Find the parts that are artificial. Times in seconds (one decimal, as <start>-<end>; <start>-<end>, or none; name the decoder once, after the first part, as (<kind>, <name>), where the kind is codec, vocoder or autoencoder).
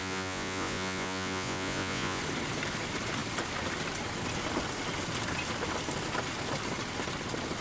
0.0-2.2 (vocoder, Vocos)